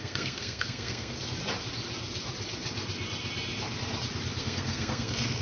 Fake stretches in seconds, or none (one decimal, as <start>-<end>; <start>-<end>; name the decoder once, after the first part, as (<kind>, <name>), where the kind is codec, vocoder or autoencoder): 0.0-1.2 (codec, SNAC); 4.4-5.4